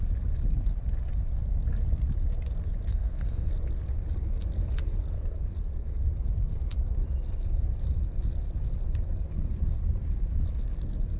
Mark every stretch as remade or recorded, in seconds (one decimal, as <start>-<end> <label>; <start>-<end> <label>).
0.0-2.9 recorded; 2.9-3.5 remade; 3.5-11.2 recorded